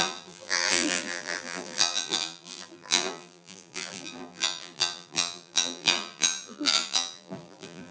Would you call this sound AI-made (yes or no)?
yes